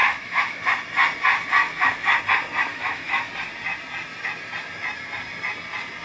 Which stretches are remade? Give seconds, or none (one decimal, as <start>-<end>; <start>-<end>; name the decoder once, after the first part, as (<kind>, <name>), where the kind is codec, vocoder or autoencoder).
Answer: 0.0-0.6 (autoencoder, DAC-VAE); 1.6-2.2; 2.7-3.3